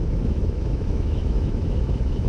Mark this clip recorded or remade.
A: remade